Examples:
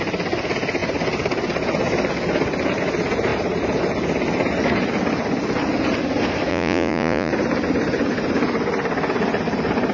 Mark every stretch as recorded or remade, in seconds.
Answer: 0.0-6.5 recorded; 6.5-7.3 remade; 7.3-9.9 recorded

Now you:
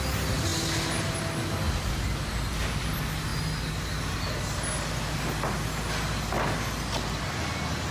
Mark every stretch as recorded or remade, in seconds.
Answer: 0.0-7.9 recorded

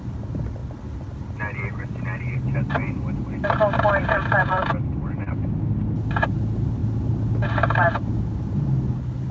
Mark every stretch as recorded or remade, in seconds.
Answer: 0.0-9.3 recorded

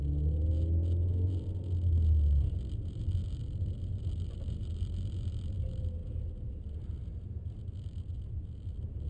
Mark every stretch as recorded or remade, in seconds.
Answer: 0.0-9.1 recorded

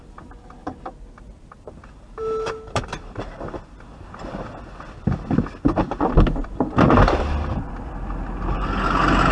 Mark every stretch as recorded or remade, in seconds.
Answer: 0.0-0.6 recorded; 0.6-3.4 remade; 3.4-9.3 recorded